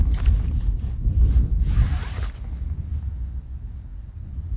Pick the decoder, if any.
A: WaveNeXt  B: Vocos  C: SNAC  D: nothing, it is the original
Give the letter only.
D